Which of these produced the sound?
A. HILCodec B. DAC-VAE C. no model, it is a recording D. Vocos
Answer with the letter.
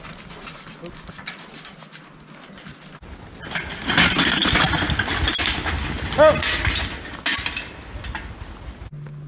C